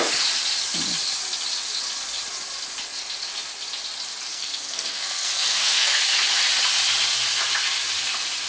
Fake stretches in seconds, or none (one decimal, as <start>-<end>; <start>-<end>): 4.3-6.0